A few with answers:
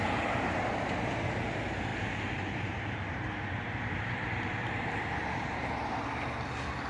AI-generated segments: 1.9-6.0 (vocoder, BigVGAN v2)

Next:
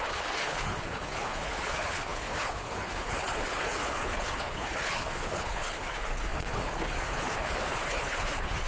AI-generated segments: 0.0-8.7 (codec, HILCodec)

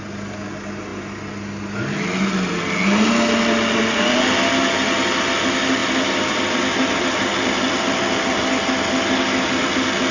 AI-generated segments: none